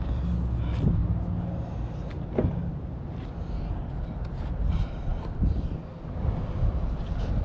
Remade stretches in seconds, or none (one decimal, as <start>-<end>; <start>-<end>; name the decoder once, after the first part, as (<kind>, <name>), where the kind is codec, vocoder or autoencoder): none